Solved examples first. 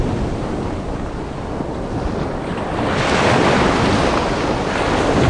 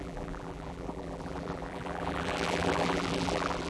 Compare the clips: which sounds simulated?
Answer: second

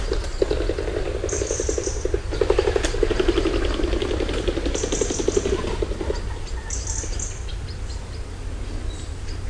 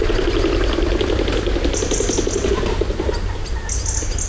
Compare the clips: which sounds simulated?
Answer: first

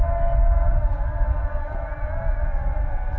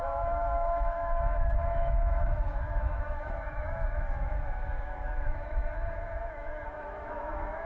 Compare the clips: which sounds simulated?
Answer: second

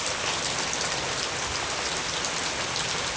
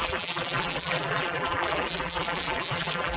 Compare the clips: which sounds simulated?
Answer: second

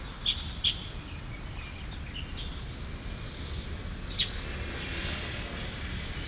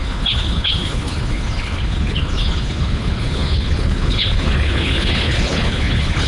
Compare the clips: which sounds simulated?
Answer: second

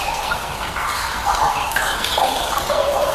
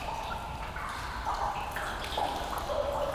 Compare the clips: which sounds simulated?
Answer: first